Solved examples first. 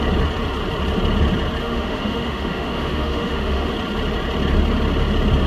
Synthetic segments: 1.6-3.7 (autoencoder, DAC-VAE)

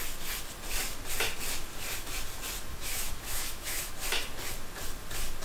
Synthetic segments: 2.7-3.9 (autoencoder, DAC-VAE)

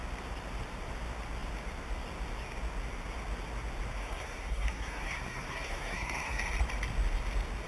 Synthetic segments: 4.0-6.4 (codec, SNAC)

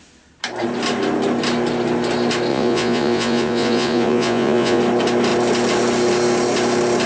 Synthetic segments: 2.5-4.8 (vocoder, Vocos)

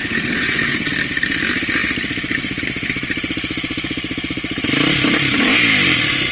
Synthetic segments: 0.0-0.9 (vocoder, WaveNeXt)

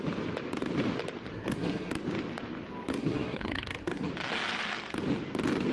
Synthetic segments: 1.3-1.9 (codec, SNAC); 2.9-4.1

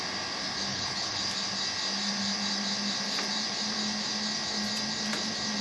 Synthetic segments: 0.7-1.2 (codec, HILCodec)

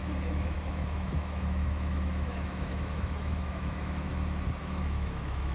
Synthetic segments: 0.0-4.1 (autoencoder, DAC-VAE); 4.6-5.5